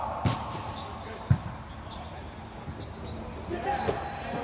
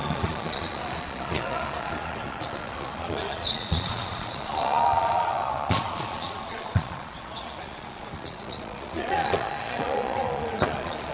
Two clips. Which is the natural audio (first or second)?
first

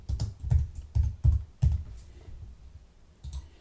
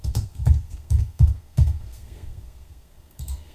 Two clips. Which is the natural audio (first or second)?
first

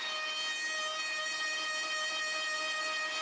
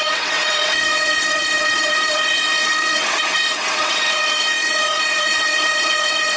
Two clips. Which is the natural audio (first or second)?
first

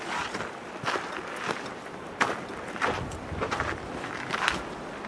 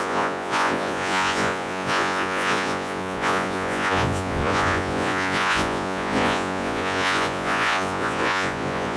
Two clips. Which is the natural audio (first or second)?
first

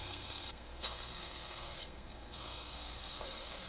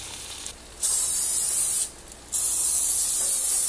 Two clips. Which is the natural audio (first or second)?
second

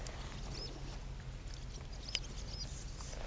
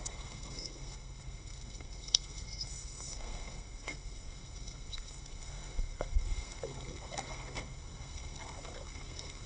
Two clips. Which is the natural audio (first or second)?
first